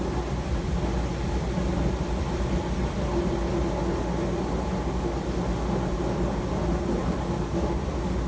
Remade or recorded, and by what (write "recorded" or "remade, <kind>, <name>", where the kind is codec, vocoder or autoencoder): recorded